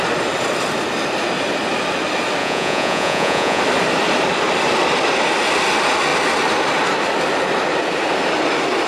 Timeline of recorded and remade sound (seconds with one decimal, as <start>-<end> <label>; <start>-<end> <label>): 0.0-2.4 recorded; 2.4-3.6 remade; 3.6-8.9 recorded